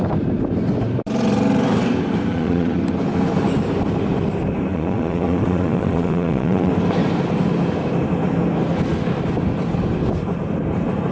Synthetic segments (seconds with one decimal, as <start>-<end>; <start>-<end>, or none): 2.3-2.8; 4.7-6.7